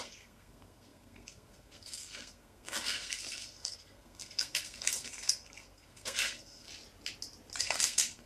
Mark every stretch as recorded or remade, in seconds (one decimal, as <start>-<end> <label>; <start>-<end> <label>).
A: 0.0-6.7 remade; 6.7-7.6 recorded; 7.6-8.3 remade